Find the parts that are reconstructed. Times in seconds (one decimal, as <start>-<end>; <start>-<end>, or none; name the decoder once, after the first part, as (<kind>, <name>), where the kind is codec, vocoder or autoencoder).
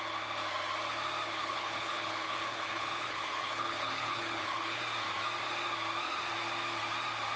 1.3-4.8 (codec, HILCodec)